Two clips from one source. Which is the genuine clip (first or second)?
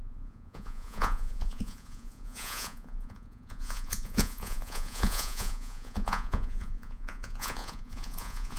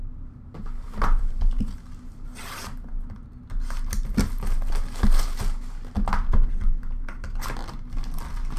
second